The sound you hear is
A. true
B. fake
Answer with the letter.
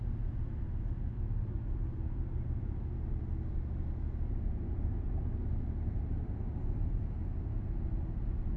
A